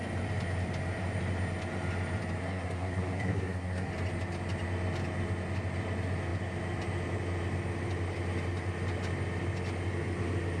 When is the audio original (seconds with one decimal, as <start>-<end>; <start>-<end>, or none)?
0.0-2.4; 3.9-10.6

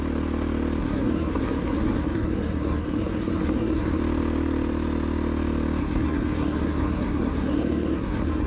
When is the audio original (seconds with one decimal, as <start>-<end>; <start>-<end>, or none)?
0.0-0.8; 4.0-5.8